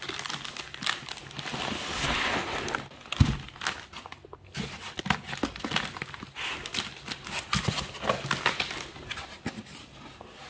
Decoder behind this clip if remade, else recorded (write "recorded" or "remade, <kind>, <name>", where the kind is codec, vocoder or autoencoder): recorded